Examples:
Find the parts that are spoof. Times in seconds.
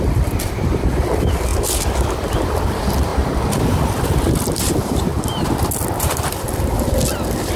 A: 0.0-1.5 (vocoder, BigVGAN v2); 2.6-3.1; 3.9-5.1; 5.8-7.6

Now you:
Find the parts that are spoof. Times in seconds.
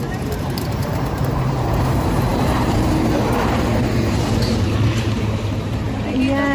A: 0.0-1.8 (vocoder, BigVGAN v2); 2.3-6.0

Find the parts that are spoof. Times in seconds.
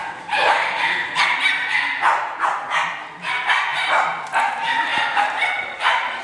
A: 0.0-1.2 (vocoder, BigVGAN v2); 3.7-4.4; 4.9-5.8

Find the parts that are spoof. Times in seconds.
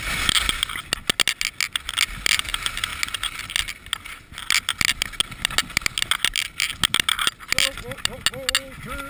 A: none